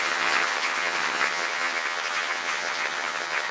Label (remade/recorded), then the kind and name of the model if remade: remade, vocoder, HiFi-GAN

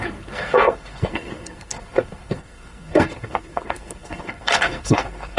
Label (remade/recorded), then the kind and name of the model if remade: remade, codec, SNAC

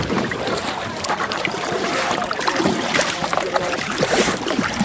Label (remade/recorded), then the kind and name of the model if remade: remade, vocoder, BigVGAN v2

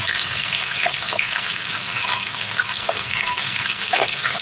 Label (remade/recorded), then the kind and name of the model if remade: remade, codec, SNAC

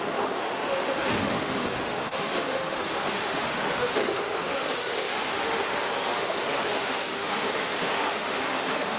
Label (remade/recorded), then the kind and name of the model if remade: remade, autoencoder, DAC-VAE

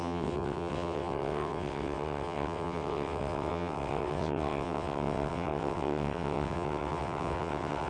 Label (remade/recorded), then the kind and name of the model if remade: remade, vocoder, WaveNeXt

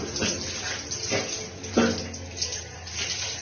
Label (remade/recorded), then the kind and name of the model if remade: recorded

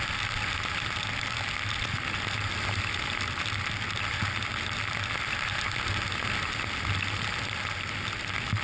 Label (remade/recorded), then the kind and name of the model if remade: recorded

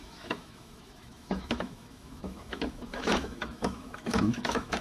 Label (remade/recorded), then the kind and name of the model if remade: remade, autoencoder, DAC-VAE